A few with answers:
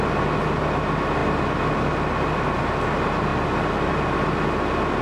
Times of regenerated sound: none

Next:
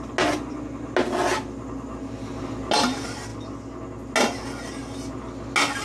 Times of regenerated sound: none

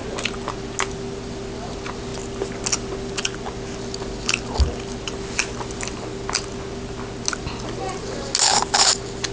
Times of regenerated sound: none

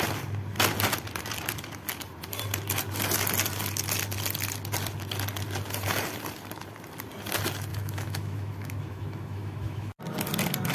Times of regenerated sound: 7.7-10.0 (autoencoder, DAC-VAE)

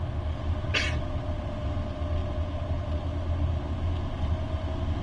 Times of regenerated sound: none

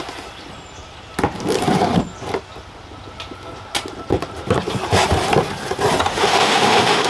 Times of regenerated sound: 6.1-7.1 (autoencoder, DAC-VAE)

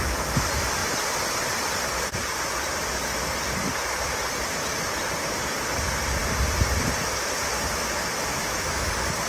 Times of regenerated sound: 8.3-8.9 (autoencoder, DAC-VAE)

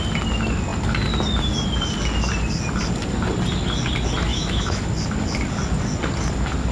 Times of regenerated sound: 4.3-4.8 (autoencoder, DAC-VAE)